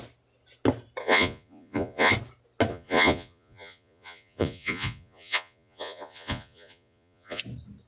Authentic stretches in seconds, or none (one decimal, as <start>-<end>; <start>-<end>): 0.0-1.0; 2.1-2.7; 7.4-7.9